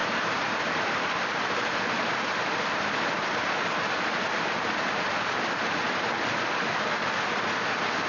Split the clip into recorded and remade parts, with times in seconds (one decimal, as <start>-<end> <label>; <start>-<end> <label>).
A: 0.0-1.8 remade; 1.8-8.1 recorded